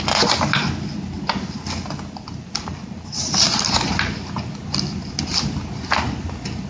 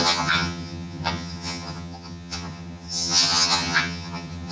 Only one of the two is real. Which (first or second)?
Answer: first